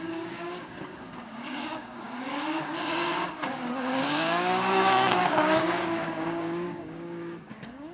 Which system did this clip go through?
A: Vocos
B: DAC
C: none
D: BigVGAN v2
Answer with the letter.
B